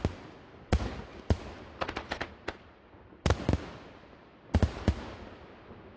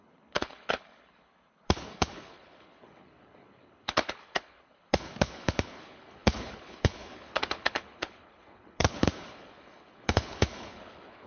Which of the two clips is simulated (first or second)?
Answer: second